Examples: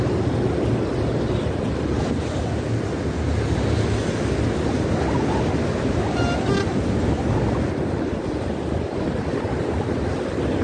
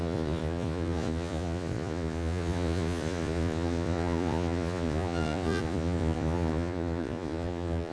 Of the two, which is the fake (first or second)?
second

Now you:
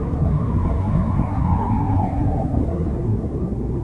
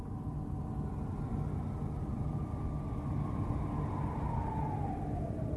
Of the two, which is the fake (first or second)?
first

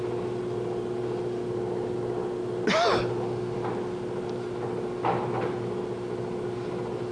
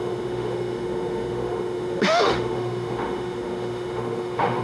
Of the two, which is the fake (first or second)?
second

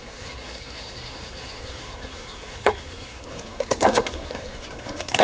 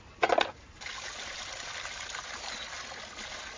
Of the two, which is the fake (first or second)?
first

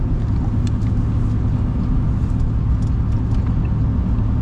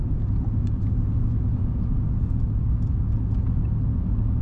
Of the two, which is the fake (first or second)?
second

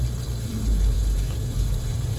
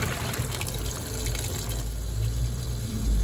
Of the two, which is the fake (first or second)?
first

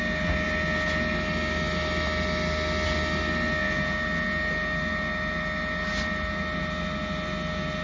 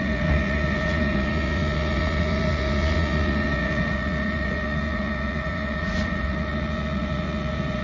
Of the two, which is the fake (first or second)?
second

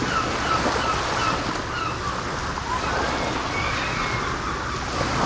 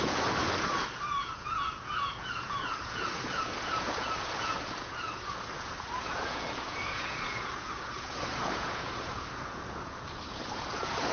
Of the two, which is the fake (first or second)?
second